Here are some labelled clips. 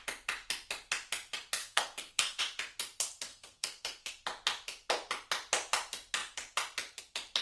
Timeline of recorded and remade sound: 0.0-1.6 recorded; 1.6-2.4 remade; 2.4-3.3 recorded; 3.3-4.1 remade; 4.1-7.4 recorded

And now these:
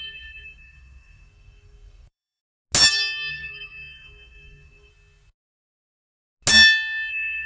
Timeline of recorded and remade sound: 0.0-2.4 remade; 2.4-3.3 recorded; 3.3-4.9 remade; 4.9-7.1 recorded; 7.1-7.5 remade

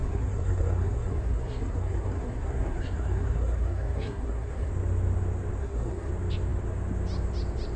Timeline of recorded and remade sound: 0.0-4.7 remade; 4.7-5.6 recorded; 5.6-6.1 remade; 6.1-7.8 recorded

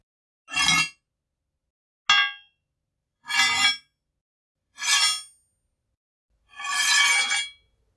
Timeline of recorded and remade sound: 0.0-8.0 recorded

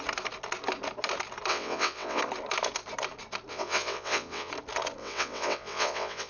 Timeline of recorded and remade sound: 0.0-1.5 recorded; 1.5-2.2 remade; 2.2-3.5 recorded; 3.5-4.5 remade; 4.5-5.0 recorded; 5.0-6.3 remade

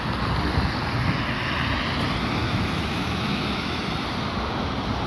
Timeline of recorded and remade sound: 0.0-2.4 recorded; 2.4-3.8 remade; 3.8-5.1 recorded

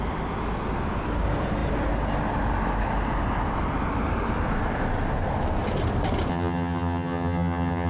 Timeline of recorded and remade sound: 0.0-6.3 recorded; 6.3-7.9 remade

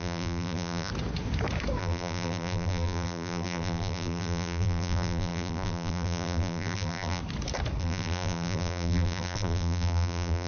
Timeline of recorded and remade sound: 0.0-0.9 remade; 0.9-1.8 recorded; 1.8-7.2 remade; 7.2-7.8 recorded; 7.8-10.5 remade